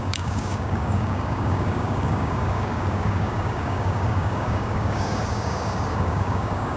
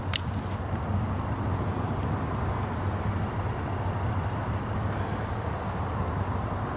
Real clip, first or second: second